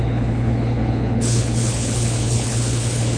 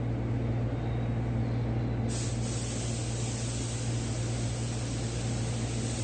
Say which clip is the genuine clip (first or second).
second